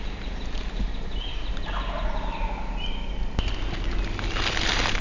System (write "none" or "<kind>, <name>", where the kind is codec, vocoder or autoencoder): none